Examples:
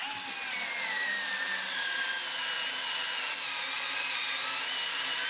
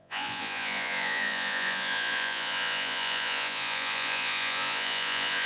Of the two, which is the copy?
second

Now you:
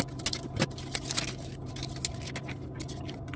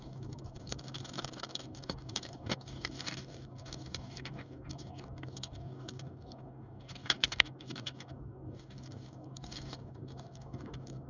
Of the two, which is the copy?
second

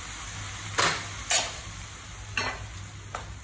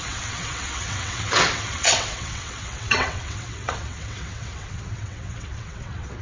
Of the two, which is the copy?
second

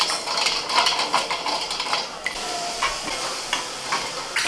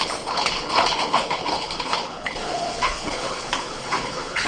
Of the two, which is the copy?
second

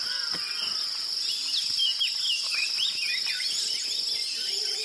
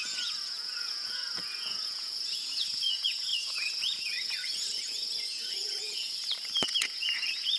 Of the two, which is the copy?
second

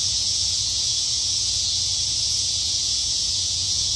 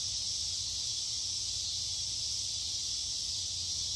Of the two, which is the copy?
first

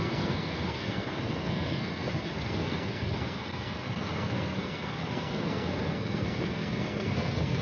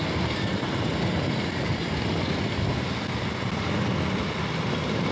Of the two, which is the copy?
first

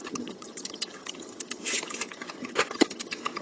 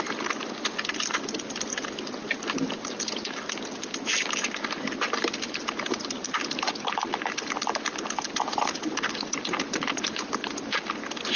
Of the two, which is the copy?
first